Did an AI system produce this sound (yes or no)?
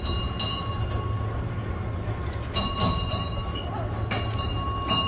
no